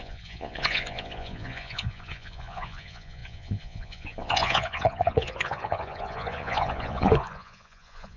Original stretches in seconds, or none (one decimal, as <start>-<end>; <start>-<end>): none